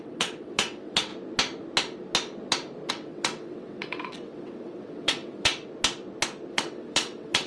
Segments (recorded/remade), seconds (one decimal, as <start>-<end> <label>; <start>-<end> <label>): 0.0-1.1 remade; 1.1-2.9 recorded; 2.9-5.5 remade; 5.5-6.5 recorded; 6.5-7.5 remade